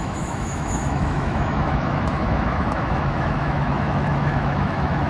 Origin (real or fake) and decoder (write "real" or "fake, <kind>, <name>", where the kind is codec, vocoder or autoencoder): fake, autoencoder, DAC-VAE